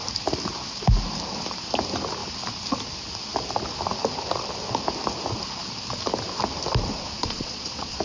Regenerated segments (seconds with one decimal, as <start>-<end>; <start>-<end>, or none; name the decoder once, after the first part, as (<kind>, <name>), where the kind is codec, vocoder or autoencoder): 7.2-8.0 (vocoder, Vocos)